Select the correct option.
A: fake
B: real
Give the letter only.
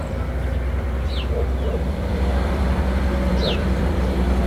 A